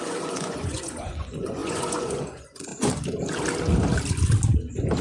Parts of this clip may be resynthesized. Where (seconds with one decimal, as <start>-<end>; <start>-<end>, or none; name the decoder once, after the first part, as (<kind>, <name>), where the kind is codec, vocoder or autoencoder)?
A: 0.0-2.7 (vocoder, Vocos)